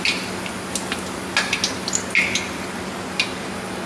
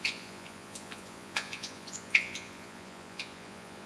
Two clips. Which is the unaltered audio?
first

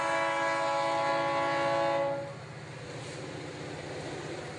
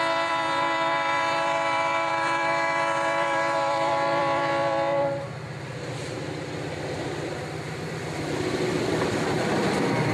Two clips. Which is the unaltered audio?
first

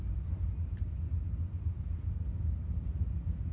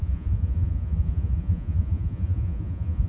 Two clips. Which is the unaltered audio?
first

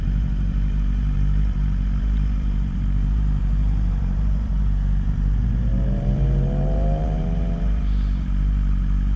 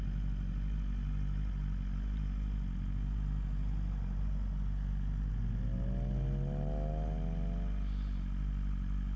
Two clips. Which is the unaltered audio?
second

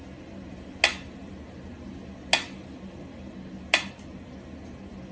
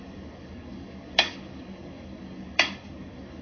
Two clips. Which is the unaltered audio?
first